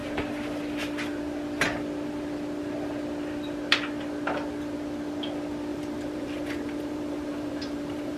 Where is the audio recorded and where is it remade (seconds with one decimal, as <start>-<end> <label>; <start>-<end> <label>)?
0.0-5.7 recorded; 5.7-8.2 remade